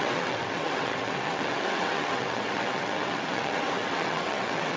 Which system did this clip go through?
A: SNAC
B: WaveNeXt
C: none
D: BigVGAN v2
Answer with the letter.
B